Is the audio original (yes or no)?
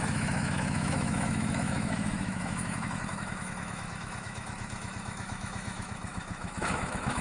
no